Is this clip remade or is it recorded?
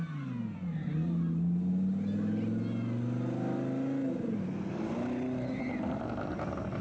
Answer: recorded